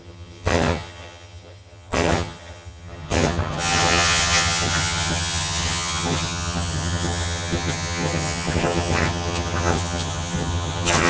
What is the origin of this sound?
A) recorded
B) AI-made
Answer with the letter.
B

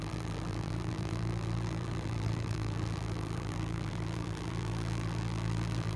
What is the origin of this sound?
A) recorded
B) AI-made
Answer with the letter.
B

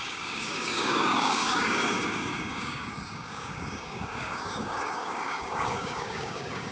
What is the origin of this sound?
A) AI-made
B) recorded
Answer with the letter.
A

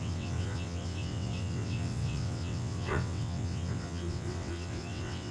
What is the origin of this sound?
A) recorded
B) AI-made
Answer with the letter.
B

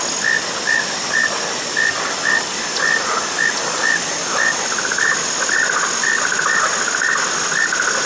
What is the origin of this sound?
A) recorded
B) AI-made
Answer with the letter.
A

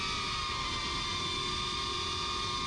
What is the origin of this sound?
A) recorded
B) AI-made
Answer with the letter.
A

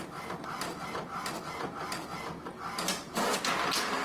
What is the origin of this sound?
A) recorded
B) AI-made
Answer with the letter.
A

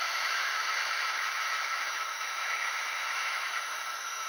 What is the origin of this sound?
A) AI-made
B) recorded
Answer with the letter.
A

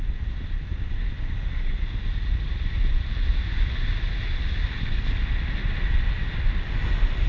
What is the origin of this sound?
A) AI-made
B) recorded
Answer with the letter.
B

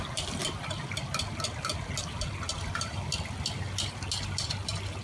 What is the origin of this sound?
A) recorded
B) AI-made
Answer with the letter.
A